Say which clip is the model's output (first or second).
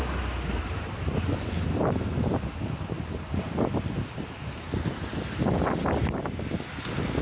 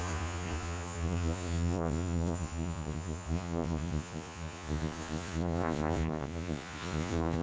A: second